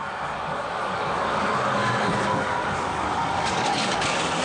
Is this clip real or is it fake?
fake